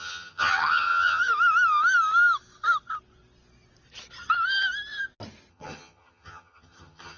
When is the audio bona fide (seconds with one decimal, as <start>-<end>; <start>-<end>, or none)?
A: 1.2-5.5